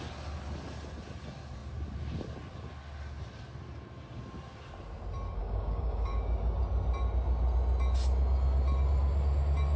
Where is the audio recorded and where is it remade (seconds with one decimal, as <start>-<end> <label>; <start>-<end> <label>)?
0.0-5.4 recorded; 5.4-6.6 remade; 6.6-9.8 recorded

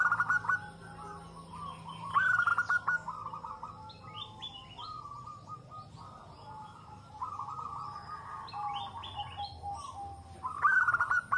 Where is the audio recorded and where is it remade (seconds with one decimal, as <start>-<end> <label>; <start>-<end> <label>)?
0.0-11.4 recorded

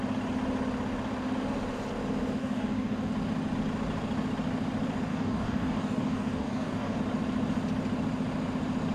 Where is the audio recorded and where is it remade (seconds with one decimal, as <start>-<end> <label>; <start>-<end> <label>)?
0.0-2.4 recorded; 2.4-3.1 remade; 3.1-5.1 recorded; 5.1-7.0 remade; 7.0-8.9 recorded

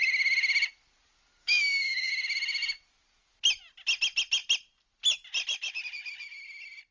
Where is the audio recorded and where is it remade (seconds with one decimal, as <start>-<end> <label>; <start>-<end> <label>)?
0.0-1.4 recorded; 1.4-2.1 remade; 2.1-6.9 recorded

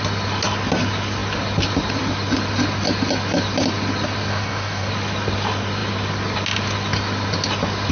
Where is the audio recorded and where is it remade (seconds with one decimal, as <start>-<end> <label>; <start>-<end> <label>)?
0.0-4.3 recorded; 4.3-4.9 remade; 4.9-7.9 recorded

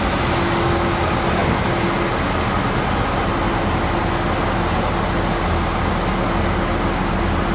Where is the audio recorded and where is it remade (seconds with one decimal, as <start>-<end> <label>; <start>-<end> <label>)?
0.0-7.5 recorded